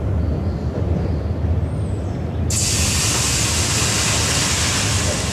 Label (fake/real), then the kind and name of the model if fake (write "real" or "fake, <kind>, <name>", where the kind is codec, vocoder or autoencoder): real